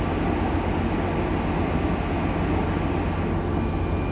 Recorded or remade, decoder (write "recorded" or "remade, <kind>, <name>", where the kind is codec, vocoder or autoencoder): recorded